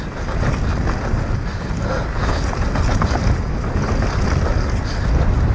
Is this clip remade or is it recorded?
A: recorded